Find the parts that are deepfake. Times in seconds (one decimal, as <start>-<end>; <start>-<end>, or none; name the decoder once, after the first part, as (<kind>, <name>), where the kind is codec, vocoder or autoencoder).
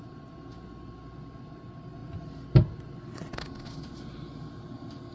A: none